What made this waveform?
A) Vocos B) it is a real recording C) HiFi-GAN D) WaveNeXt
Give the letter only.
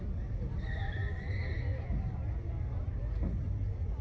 B